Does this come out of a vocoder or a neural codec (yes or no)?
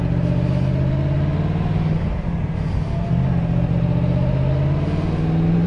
no